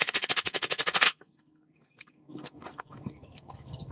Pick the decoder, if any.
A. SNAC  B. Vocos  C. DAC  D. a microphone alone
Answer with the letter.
A